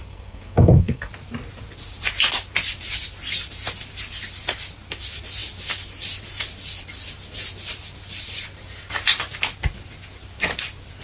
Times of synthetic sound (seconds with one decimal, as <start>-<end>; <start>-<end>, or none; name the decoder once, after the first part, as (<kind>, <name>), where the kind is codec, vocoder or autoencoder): 0.0-1.1 (codec, SNAC)